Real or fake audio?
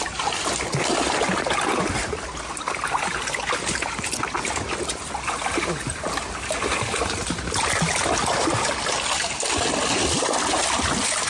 real